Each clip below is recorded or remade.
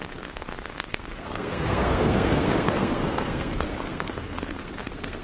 remade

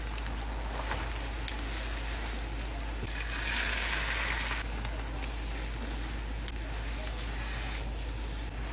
recorded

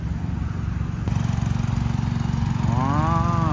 recorded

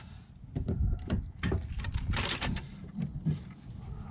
recorded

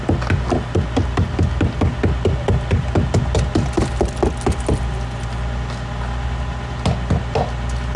recorded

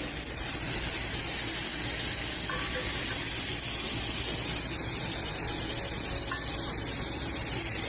recorded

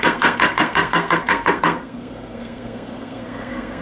remade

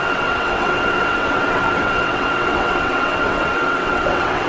remade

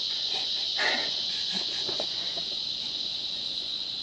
remade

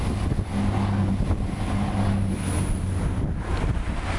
recorded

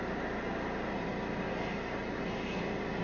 recorded